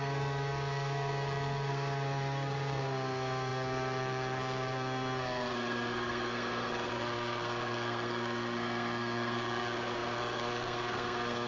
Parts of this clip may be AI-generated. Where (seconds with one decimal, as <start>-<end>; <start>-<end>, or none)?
0.0-11.5